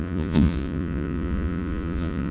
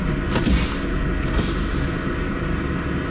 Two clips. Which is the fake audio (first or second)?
first